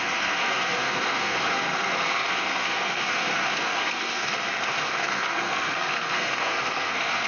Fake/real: fake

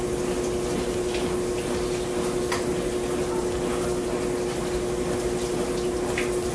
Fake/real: real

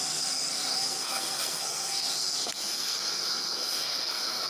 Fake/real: fake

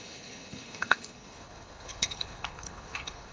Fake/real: fake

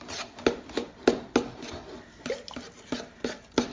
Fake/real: real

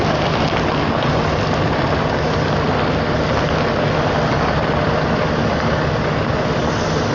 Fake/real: real